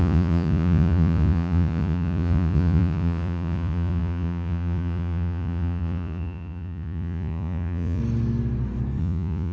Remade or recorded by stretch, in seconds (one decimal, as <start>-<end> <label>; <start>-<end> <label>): 0.0-8.0 remade; 8.0-9.0 recorded; 9.0-9.5 remade